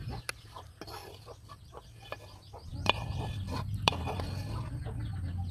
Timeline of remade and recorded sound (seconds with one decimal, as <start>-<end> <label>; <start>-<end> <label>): 0.0-1.0 recorded; 1.0-1.8 remade; 1.8-2.7 recorded; 2.7-3.9 remade; 3.9-5.5 recorded